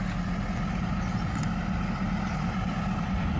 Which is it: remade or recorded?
recorded